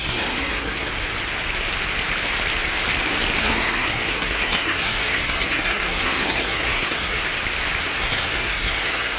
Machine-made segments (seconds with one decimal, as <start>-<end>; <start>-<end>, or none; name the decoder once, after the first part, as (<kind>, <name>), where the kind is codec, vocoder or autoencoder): 0.0-0.9 (codec, SNAC); 3.4-7.2; 7.8-9.2